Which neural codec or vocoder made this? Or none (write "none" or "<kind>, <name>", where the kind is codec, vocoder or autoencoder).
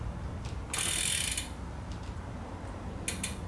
none